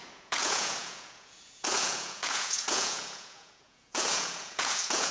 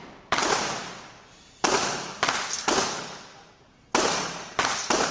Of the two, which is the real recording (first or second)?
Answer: second